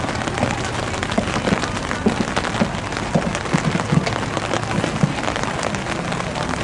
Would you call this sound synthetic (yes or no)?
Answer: no